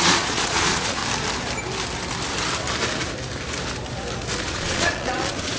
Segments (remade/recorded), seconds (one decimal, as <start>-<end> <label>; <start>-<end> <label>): 0.0-1.0 remade; 1.0-4.4 recorded; 4.4-5.6 remade